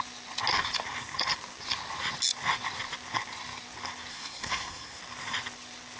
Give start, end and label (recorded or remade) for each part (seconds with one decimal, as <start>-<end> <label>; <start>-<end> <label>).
0.0-4.1 recorded; 4.1-5.0 remade; 5.0-6.0 recorded